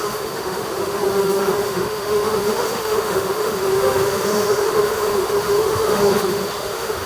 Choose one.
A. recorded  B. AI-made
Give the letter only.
B